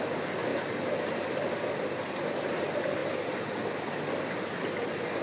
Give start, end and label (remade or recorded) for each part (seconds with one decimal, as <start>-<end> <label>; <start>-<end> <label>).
0.0-0.5 recorded; 0.5-1.2 remade; 1.2-5.2 recorded